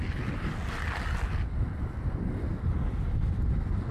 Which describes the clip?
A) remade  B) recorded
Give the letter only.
B